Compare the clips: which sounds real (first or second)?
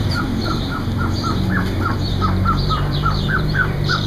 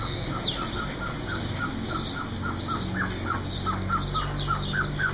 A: second